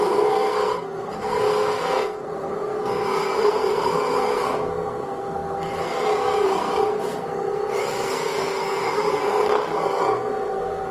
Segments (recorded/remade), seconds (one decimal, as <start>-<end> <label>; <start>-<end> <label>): 0.0-10.9 remade